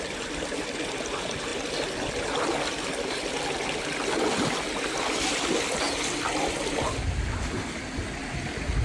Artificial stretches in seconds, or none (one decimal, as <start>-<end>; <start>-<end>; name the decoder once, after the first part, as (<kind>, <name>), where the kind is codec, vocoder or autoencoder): none